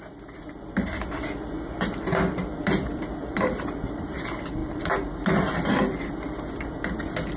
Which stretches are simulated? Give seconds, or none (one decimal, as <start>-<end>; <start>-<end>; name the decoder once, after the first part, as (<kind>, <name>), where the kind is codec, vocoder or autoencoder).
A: 3.2-3.8 (vocoder, BigVGAN v2); 4.6-6.5